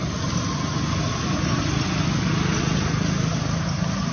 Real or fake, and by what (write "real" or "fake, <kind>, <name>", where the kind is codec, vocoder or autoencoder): real